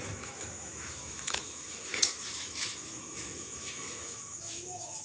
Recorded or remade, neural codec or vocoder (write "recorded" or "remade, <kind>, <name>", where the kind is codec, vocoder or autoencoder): remade, autoencoder, DAC-VAE